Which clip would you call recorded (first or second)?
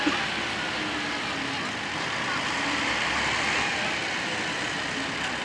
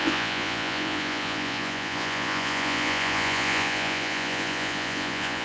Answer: first